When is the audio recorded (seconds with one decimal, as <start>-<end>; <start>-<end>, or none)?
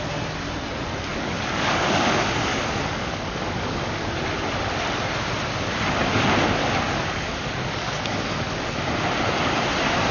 0.0-1.1; 2.1-2.5; 4.0-6.6; 8.8-10.1